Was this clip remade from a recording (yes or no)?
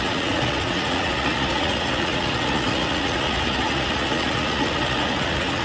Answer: yes